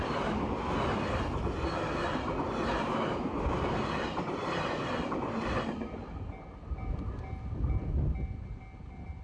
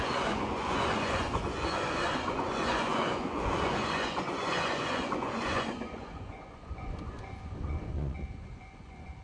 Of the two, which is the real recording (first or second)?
first